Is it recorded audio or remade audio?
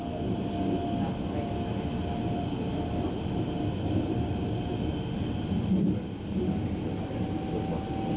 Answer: recorded